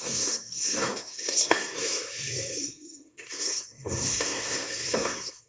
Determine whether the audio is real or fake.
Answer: fake